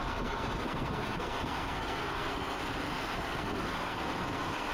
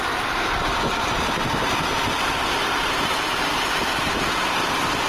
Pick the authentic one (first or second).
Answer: second